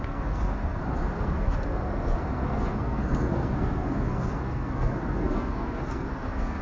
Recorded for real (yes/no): no